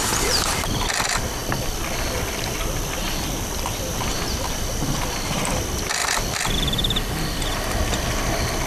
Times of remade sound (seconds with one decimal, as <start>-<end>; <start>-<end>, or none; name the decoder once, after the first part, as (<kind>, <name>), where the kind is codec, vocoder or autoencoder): 1.4-4.0 (vocoder, BigVGAN v2); 6.0-7.1